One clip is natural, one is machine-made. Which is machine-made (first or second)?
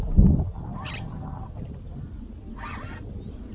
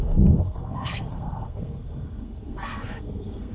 second